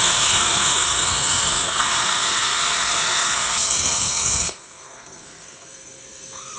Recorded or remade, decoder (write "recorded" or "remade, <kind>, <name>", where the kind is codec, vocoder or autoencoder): remade, codec, SNAC